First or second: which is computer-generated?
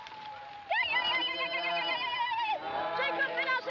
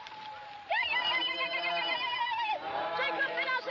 second